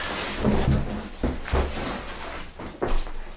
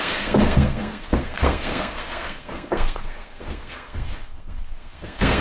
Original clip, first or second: first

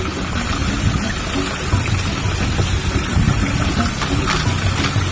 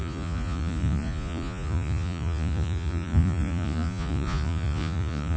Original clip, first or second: first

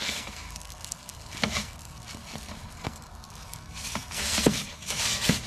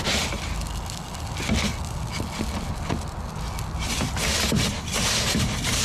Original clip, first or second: second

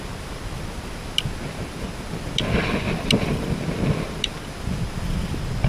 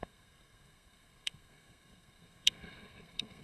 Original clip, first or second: first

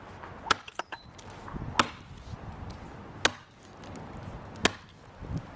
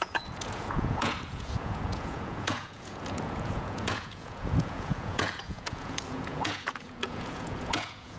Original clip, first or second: first